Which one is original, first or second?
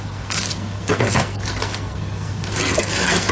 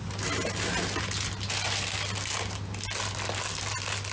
second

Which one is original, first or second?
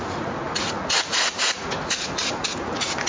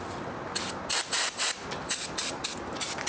second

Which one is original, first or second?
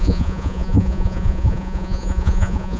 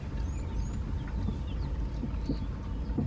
second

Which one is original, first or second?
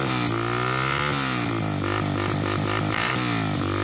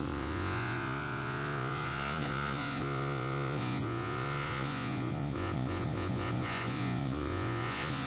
first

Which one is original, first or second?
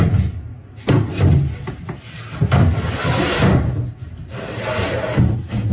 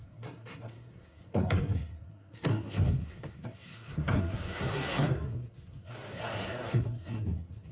first